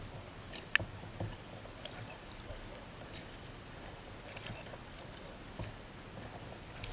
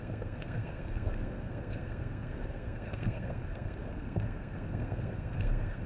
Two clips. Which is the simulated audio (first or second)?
second